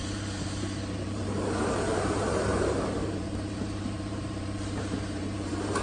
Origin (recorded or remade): remade